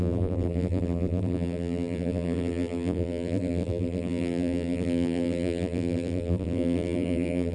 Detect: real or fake fake